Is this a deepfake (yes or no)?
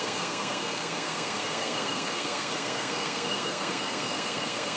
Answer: yes